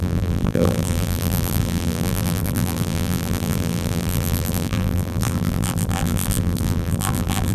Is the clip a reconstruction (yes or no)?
yes